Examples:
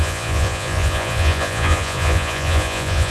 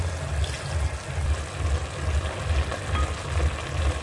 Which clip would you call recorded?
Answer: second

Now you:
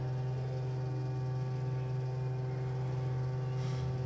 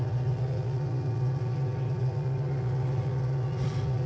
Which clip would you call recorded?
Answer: first